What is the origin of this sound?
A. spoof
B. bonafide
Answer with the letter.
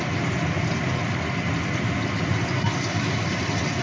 B